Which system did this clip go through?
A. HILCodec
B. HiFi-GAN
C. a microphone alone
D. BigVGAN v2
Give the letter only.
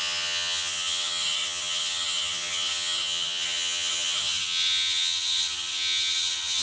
B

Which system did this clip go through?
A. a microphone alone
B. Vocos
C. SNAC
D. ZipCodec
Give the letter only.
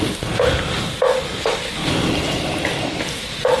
A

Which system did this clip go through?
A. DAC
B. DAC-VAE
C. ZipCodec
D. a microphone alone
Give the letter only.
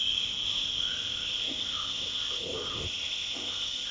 C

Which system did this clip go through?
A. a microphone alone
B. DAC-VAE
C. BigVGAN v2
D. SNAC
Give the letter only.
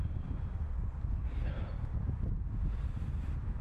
A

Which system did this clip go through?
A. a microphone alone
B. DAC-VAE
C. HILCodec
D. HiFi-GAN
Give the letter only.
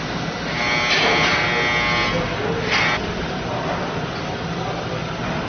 A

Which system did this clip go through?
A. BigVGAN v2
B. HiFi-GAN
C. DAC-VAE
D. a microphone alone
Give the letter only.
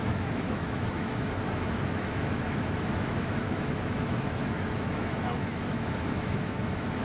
C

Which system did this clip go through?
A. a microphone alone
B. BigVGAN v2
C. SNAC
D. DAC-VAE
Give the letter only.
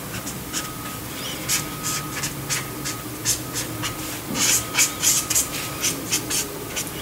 A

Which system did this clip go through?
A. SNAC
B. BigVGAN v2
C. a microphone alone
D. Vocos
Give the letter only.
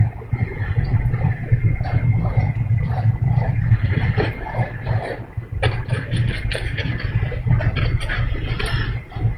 C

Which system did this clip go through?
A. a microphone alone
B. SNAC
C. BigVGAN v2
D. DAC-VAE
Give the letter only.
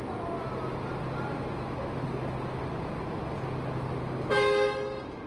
A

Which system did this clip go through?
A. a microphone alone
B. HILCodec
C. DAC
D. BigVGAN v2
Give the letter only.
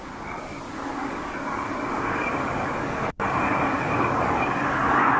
C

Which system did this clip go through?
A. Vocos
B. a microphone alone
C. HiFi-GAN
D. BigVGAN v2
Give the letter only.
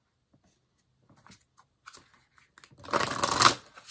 B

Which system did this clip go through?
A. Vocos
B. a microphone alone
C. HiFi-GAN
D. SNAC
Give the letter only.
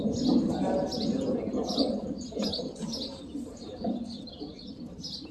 B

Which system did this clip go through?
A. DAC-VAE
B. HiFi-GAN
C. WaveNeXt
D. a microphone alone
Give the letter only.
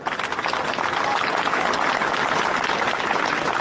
D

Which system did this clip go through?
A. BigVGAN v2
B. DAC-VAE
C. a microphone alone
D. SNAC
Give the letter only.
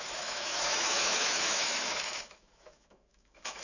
B